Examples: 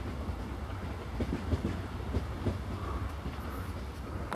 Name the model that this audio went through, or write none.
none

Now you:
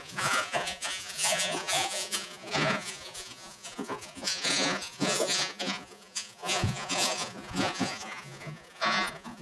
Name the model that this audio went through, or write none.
vocoder, Vocos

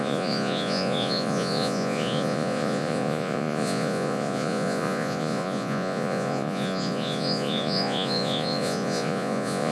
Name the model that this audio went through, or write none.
vocoder, Vocos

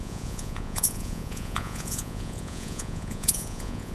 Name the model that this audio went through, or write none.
vocoder, Vocos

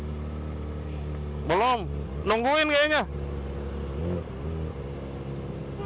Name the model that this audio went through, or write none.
none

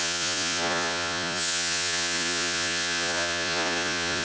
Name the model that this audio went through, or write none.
vocoder, Vocos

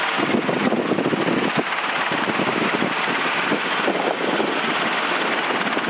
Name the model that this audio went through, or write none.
none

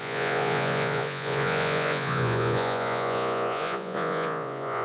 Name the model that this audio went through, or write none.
vocoder, Vocos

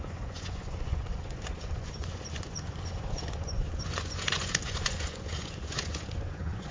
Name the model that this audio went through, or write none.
vocoder, Vocos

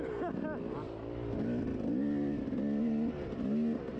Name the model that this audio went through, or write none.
none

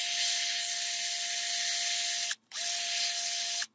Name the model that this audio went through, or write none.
none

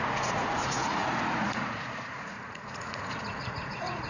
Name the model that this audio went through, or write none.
vocoder, Vocos